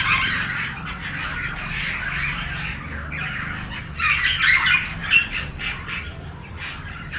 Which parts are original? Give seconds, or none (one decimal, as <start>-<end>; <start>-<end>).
0.0-5.0; 6.5-7.2